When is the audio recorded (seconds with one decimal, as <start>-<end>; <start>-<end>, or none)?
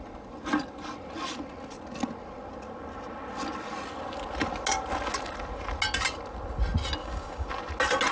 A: 0.0-7.0; 7.5-8.1